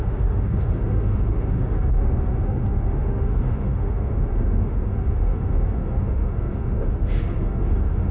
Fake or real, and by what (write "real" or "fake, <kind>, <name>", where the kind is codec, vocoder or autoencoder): fake, autoencoder, DAC-VAE